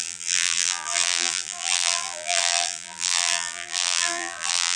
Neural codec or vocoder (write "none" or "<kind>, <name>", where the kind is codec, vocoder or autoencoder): vocoder, BigVGAN v2